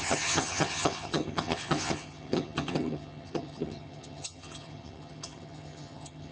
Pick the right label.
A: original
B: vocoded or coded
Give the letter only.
B